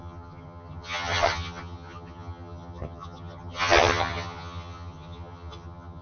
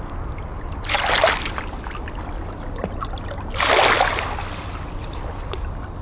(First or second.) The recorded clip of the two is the second